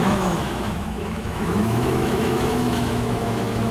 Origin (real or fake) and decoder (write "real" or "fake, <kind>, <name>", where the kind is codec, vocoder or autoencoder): fake, autoencoder, DAC-VAE